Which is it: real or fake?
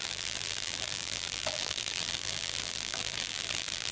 fake